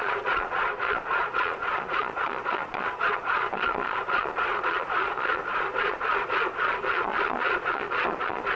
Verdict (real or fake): fake